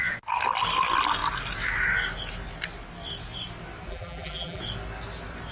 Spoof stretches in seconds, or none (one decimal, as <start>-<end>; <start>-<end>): 3.9-4.6